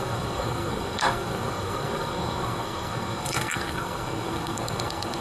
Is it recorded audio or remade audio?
remade